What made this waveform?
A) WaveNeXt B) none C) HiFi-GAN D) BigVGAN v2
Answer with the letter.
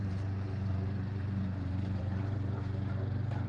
D